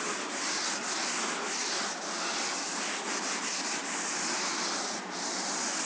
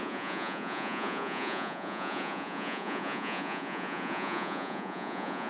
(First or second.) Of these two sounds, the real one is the first